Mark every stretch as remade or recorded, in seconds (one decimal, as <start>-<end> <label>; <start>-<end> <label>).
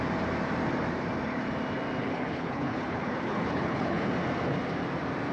0.0-2.0 recorded; 2.0-4.1 remade; 4.1-5.3 recorded